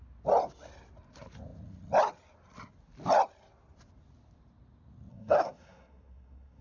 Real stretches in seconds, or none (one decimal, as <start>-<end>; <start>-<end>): 0.0-5.1